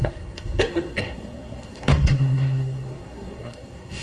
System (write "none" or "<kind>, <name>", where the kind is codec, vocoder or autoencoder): codec, SNAC